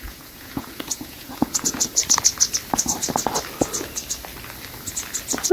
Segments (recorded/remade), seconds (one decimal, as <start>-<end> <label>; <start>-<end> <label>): 0.0-2.0 remade; 2.0-5.5 recorded